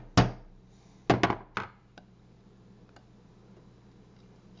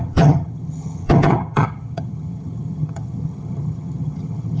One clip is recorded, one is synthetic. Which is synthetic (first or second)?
second